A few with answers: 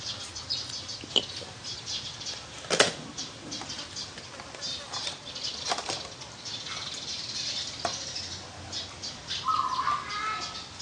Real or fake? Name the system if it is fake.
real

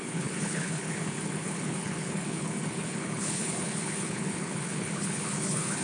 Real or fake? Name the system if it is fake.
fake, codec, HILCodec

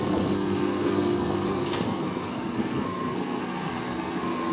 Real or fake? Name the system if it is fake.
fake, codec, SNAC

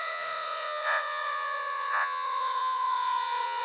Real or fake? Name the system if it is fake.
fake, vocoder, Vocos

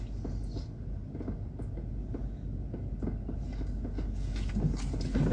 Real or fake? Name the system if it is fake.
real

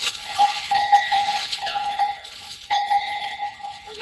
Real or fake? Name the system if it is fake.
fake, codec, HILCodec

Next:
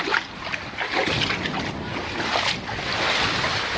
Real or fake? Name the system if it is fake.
real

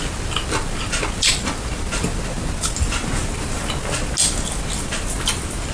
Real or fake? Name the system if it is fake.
real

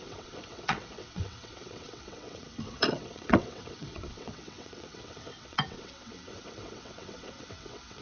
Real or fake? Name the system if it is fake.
fake, vocoder, WaveNeXt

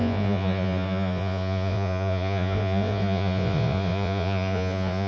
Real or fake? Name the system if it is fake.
fake, vocoder, Vocos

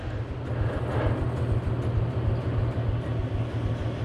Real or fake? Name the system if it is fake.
real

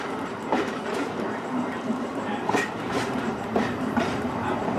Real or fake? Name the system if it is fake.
fake, vocoder, BigVGAN v2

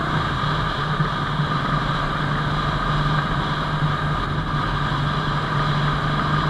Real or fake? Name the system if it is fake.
real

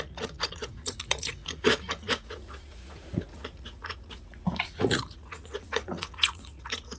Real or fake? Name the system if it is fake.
fake, vocoder, Vocos